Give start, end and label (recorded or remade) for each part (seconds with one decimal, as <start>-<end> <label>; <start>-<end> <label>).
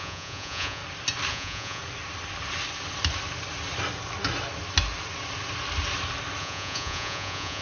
0.0-0.8 remade; 0.8-1.3 recorded; 1.3-1.8 remade; 1.8-6.4 recorded; 6.4-7.6 remade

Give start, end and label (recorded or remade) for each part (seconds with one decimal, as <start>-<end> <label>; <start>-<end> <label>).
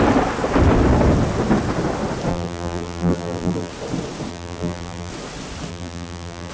0.0-2.3 recorded; 2.3-3.7 remade; 3.7-4.3 recorded; 4.3-5.1 remade; 5.1-5.7 recorded; 5.7-6.5 remade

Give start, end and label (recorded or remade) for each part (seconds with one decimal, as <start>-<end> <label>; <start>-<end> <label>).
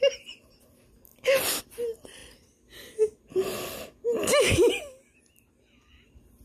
0.0-6.4 recorded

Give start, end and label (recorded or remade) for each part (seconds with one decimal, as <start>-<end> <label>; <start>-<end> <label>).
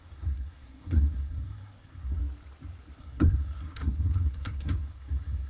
0.0-2.2 remade; 2.2-3.0 recorded; 3.0-5.5 remade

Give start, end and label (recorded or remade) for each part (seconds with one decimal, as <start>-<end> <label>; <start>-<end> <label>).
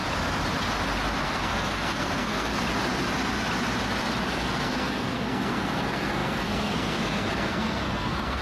0.0-1.2 recorded; 1.2-2.5 remade; 2.5-4.3 recorded; 4.3-8.4 remade